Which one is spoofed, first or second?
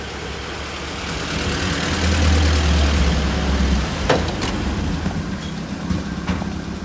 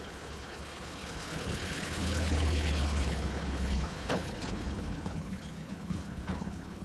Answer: second